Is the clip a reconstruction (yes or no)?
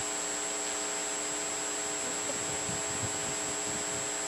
no